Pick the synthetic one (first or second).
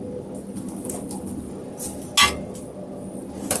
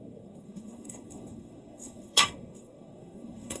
second